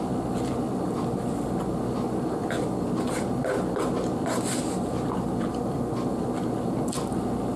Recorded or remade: recorded